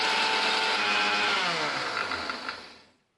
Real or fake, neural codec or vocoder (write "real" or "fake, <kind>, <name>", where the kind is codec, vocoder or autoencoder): real